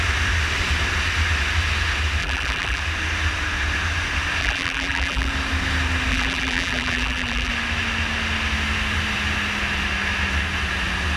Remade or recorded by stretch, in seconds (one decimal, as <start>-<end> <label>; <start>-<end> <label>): 0.0-2.2 recorded; 2.2-2.8 remade; 2.8-4.4 recorded; 4.4-5.3 remade; 5.3-6.1 recorded; 6.1-7.5 remade; 7.5-11.2 recorded